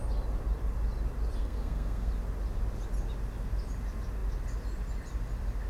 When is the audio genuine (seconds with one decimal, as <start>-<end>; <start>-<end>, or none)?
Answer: 0.0-1.4; 2.1-5.7